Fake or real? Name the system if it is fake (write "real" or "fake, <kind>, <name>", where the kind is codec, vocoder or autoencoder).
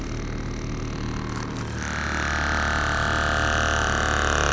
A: real